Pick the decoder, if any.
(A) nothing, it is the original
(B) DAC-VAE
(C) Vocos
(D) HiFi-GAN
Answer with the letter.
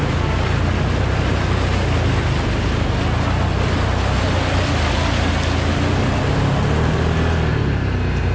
A